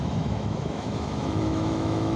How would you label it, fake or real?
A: fake